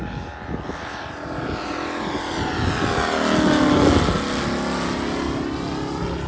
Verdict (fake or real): real